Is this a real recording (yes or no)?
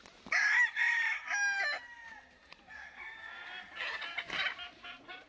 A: yes